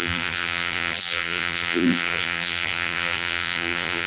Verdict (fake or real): fake